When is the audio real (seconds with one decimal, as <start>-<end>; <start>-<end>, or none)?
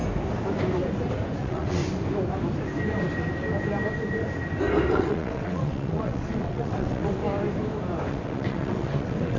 0.0-1.4; 1.8-4.9; 7.2-8.1